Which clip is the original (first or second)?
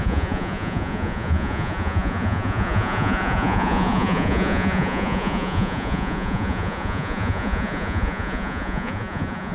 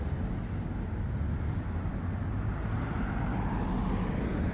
second